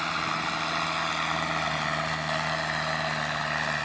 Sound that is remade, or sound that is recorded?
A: recorded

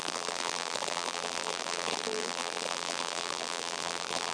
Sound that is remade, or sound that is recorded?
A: remade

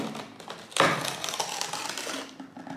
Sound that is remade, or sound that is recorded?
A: recorded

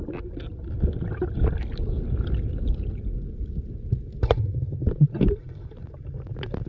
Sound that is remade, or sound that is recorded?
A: recorded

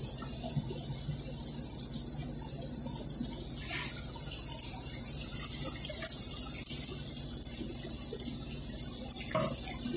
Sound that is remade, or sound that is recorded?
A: recorded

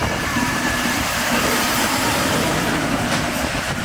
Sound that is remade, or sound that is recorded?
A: remade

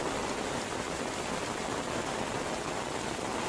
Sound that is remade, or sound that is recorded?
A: recorded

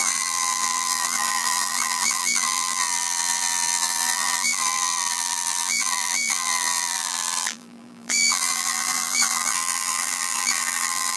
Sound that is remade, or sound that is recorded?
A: remade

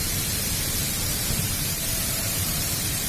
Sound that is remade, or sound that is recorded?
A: remade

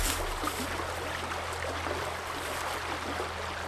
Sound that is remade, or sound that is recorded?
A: recorded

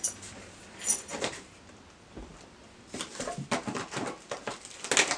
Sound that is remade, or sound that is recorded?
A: recorded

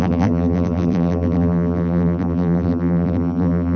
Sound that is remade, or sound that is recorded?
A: remade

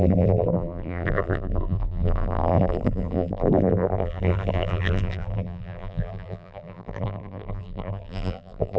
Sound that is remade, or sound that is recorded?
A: remade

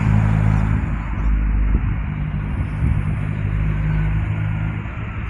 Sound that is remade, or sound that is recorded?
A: recorded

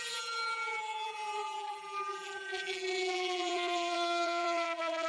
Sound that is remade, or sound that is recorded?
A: remade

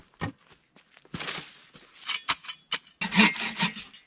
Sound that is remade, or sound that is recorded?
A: recorded